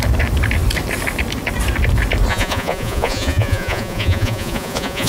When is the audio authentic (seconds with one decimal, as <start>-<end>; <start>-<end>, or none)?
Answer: 0.0-2.3